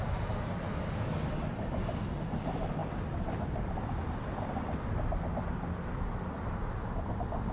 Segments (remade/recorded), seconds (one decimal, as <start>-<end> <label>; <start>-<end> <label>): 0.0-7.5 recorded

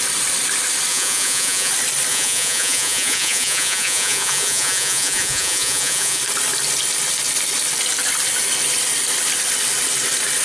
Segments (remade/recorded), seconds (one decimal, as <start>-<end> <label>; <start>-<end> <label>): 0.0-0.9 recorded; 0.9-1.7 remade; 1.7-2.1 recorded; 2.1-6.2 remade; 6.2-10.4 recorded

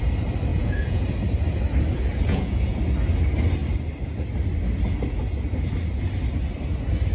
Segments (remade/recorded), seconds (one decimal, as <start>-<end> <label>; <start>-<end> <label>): 0.0-0.5 recorded; 0.5-1.0 remade; 1.0-2.3 recorded; 2.3-2.8 remade; 2.8-7.1 recorded